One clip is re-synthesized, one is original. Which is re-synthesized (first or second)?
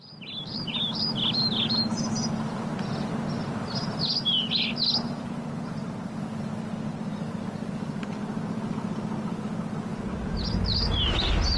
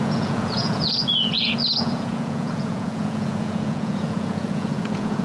second